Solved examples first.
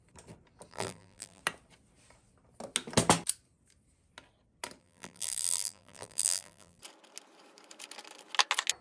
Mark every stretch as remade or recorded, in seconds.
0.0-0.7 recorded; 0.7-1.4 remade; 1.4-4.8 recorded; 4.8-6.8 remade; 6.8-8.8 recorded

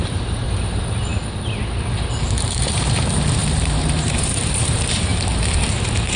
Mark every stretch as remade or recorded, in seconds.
0.0-1.1 remade; 1.1-2.1 recorded; 2.1-5.1 remade; 5.1-5.7 recorded; 5.7-6.2 remade

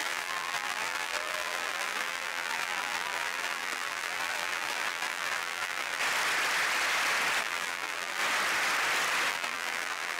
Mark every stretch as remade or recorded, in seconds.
0.0-6.0 remade; 6.0-7.4 recorded; 7.4-8.2 remade; 8.2-9.3 recorded; 9.3-10.2 remade

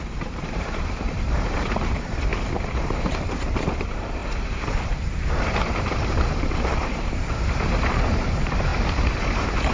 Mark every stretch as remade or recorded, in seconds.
0.0-2.3 remade; 2.3-2.8 recorded; 2.8-9.7 remade

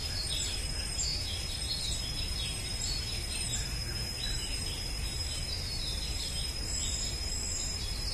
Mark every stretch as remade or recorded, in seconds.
0.0-3.8 recorded; 3.8-5.4 remade; 5.4-8.1 recorded